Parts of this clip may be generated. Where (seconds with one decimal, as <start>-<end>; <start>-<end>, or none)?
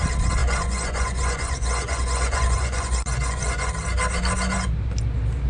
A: 0.4-3.7